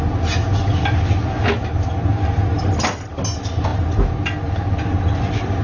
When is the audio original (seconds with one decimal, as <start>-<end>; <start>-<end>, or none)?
0.0-5.6